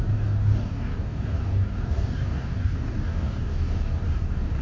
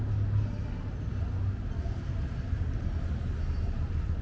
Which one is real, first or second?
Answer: second